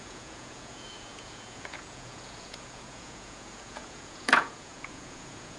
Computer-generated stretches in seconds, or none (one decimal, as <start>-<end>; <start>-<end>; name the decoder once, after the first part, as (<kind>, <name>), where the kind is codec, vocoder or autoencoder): 0.0-5.6 (vocoder, Vocos)